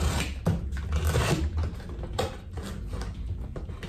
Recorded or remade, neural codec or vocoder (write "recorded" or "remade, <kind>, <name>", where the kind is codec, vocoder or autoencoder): recorded